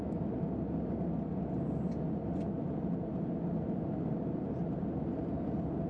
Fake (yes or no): no